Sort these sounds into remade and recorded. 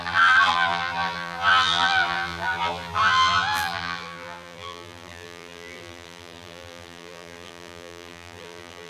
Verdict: remade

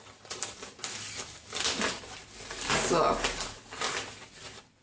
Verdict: recorded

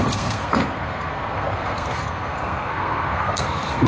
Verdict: remade